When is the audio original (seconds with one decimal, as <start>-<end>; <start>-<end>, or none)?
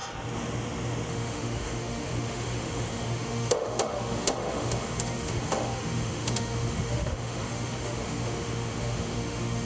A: 0.0-1.1